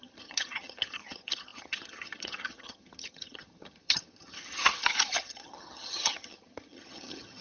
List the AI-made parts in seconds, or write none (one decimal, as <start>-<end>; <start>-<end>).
0.0-7.4

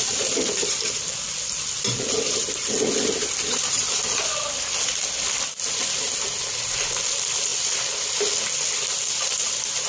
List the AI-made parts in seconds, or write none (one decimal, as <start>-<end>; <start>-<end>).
none

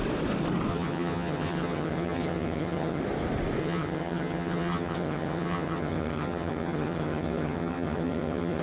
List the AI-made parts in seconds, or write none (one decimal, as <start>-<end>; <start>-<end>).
0.7-3.0; 3.6-8.6